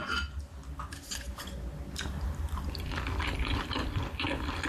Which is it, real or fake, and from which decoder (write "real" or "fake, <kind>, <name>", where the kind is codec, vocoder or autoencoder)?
real